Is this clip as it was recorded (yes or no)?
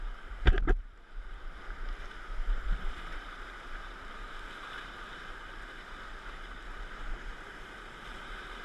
no